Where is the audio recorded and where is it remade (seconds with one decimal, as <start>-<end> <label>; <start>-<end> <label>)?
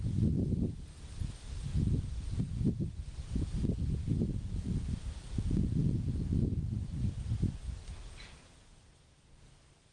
0.0-1.7 recorded; 1.7-6.6 remade; 6.6-7.8 recorded; 7.8-9.5 remade; 9.5-9.9 recorded